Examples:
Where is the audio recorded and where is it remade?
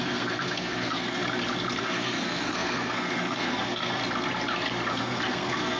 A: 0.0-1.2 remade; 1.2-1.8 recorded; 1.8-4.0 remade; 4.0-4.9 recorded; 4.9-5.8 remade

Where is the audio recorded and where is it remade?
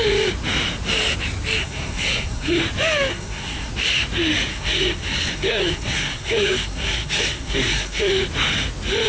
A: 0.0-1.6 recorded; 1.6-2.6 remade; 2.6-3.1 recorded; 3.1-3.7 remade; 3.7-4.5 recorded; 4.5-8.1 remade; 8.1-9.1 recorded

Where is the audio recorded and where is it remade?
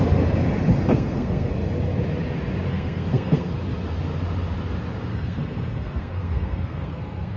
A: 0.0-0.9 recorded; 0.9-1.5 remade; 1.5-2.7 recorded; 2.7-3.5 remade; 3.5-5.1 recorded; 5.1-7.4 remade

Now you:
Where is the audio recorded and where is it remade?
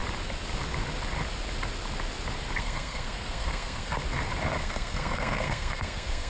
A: 0.0-2.6 recorded; 2.6-4.0 remade; 4.0-4.6 recorded; 4.6-6.3 remade